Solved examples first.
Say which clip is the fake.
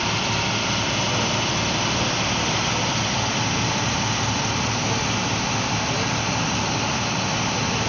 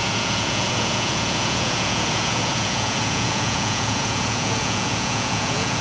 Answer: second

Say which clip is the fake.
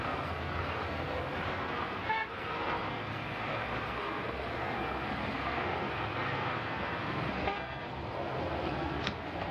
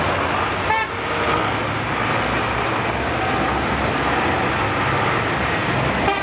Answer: first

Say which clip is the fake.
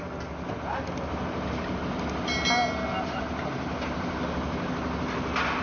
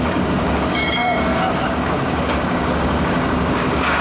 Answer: second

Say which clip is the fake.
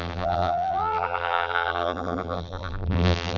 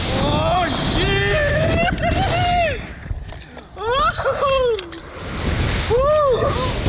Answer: first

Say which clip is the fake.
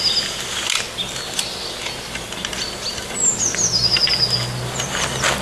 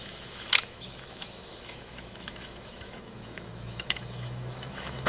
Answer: second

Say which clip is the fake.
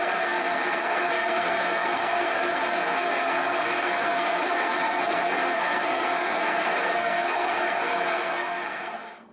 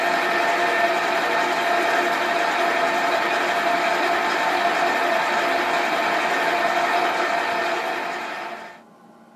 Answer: first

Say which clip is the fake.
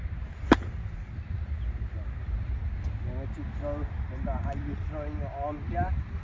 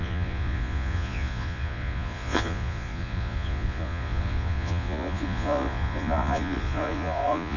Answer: second